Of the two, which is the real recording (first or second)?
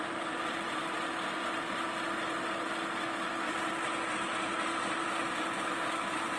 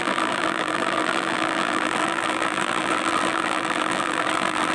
first